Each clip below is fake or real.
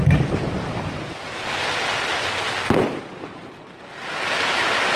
real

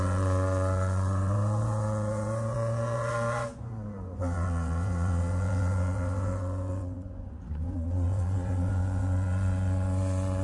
fake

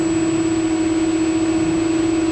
real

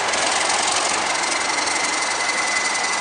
real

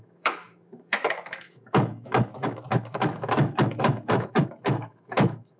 fake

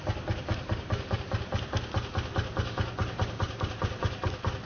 real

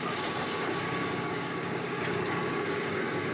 fake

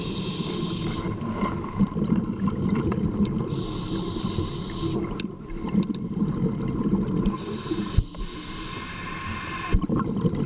real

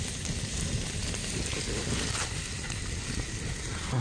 real